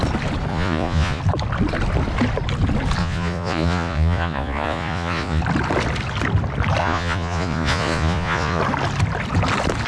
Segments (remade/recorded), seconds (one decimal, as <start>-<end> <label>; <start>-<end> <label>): 0.0-0.5 recorded; 0.5-1.2 remade; 1.2-3.0 recorded; 3.0-5.4 remade; 5.4-6.8 recorded; 6.8-8.6 remade; 8.6-9.9 recorded